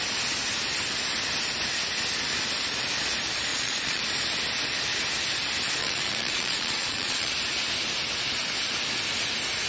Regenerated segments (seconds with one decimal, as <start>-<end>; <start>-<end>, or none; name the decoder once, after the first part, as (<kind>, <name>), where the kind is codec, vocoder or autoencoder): 3.5-4.0 (vocoder, Vocos); 5.8-7.3